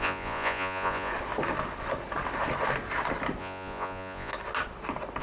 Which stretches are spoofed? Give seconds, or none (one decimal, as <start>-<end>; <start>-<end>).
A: 0.0-1.1; 3.4-4.3